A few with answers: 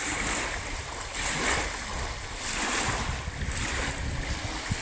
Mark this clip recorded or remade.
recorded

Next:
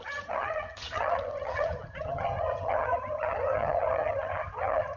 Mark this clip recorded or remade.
remade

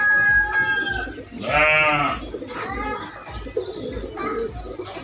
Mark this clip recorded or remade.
recorded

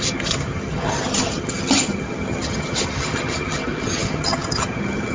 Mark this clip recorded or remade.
remade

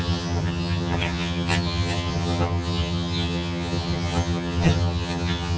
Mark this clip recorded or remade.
remade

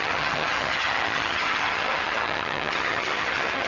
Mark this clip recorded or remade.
remade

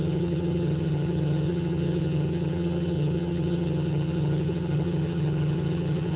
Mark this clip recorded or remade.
remade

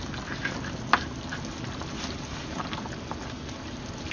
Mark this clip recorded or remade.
recorded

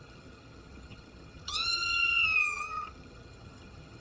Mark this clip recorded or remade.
remade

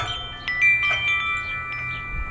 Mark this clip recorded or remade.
recorded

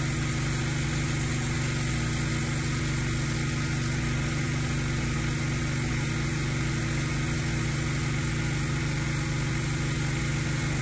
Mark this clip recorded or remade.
recorded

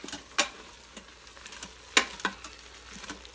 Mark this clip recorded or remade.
recorded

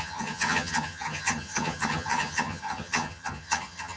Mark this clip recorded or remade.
remade